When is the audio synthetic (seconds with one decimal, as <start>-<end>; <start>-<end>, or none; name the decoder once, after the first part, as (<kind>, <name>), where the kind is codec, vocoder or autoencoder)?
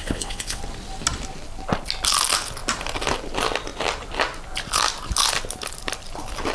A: 0.0-0.6 (vocoder, WaveNeXt)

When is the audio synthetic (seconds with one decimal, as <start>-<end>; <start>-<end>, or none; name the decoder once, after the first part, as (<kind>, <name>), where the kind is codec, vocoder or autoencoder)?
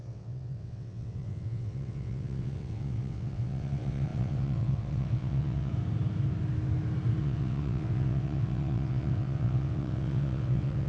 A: 0.0-5.7 (vocoder, WaveNeXt); 7.2-10.9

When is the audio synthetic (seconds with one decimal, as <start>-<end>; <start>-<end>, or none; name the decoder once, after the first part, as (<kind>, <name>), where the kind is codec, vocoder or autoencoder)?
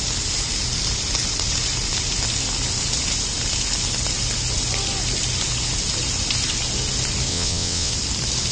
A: 7.3-7.9 (vocoder, WaveNeXt)